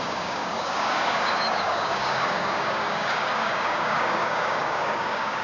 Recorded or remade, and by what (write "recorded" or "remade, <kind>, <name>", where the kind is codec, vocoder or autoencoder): remade, codec, DAC